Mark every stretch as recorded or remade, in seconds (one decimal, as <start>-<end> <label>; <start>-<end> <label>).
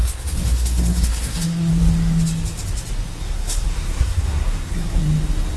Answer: 0.0-1.7 remade; 1.7-3.2 recorded; 3.2-5.0 remade; 5.0-5.6 recorded